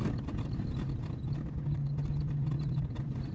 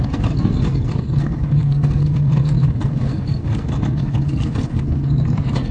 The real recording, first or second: first